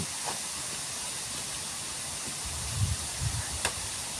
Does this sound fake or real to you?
real